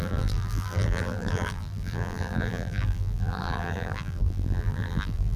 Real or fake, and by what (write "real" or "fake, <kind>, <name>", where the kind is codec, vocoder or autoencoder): fake, vocoder, BigVGAN v2